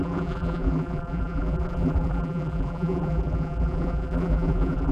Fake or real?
fake